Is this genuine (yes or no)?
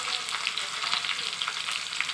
yes